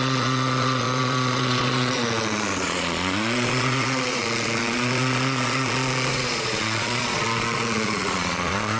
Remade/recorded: remade